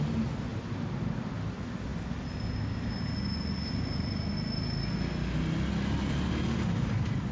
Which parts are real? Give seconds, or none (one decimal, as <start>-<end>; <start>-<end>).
0.0-7.3

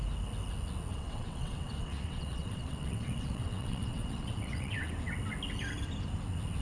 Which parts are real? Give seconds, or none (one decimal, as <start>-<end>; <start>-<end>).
0.0-0.9; 4.9-6.6

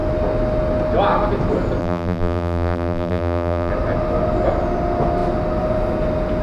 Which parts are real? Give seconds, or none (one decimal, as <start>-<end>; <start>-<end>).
0.0-1.8; 3.7-6.4

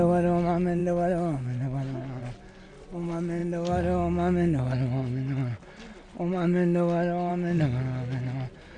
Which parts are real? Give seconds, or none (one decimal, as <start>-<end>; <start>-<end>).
0.0-8.8